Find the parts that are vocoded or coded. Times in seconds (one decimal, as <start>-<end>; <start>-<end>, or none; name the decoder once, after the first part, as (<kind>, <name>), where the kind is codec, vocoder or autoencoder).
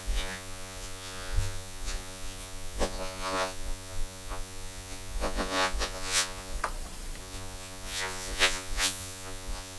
0.0-6.6 (vocoder, Vocos); 7.2-9.8